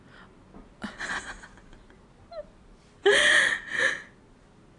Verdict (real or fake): real